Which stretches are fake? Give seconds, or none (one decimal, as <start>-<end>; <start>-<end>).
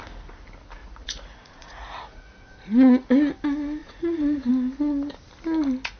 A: 0.8-3.1; 3.8-4.5